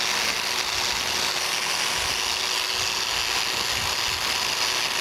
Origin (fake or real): real